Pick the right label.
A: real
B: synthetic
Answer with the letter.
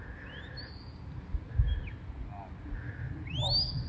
A